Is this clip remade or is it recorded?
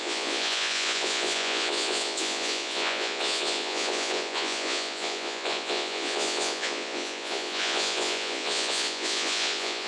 remade